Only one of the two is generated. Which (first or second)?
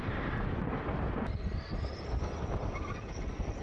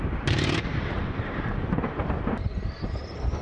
second